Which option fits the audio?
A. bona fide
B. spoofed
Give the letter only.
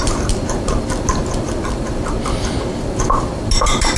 A